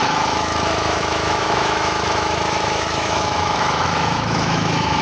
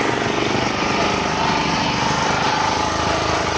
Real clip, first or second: second